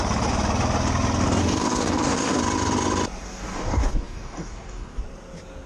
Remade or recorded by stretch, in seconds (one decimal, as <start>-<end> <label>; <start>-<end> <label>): 0.0-1.4 recorded; 1.4-2.4 remade; 2.4-3.2 recorded; 3.2-5.0 remade; 5.0-5.7 recorded